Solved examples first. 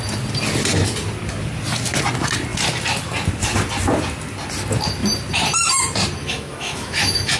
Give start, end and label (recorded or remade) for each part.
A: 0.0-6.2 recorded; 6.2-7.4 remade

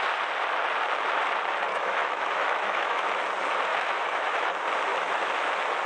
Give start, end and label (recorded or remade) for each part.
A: 0.0-1.7 recorded; 1.7-3.1 remade; 3.1-3.7 recorded; 3.7-4.5 remade; 4.5-4.9 recorded; 4.9-5.5 remade; 5.5-5.9 recorded

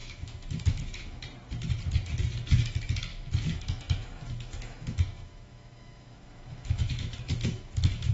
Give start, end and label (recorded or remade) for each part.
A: 0.0-1.2 remade; 1.2-3.1 recorded; 3.1-8.1 remade

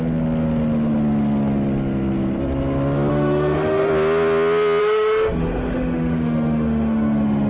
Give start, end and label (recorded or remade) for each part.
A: 0.0-3.1 recorded; 3.1-3.9 remade; 3.9-4.8 recorded; 4.8-7.5 remade

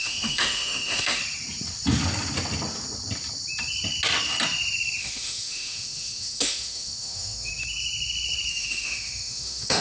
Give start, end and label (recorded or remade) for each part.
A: 0.0-1.2 remade; 1.2-5.0 recorded; 5.0-7.5 remade; 7.5-8.5 recorded; 8.5-9.8 remade

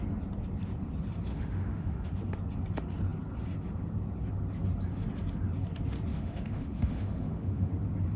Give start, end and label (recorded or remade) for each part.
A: 0.0-1.3 recorded; 1.3-2.2 remade; 2.2-6.1 recorded; 6.1-7.7 remade; 7.7-8.2 recorded